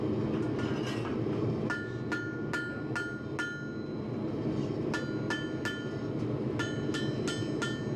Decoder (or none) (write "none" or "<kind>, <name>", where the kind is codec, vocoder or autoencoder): none